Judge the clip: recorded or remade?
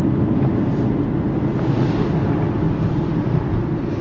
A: recorded